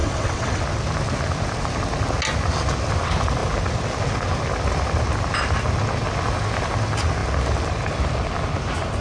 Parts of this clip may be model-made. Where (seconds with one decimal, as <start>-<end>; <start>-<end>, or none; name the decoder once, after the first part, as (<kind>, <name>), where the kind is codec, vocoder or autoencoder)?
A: 0.0-0.6 (vocoder, WaveNeXt)